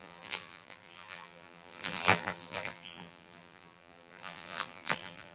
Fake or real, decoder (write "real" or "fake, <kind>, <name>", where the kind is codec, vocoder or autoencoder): fake, vocoder, BigVGAN v2